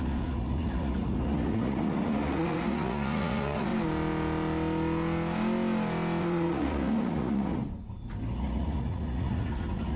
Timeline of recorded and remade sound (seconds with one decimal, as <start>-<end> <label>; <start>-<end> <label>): 0.0-3.7 remade; 3.7-6.2 recorded; 6.2-7.6 remade; 7.6-8.4 recorded; 8.4-10.0 remade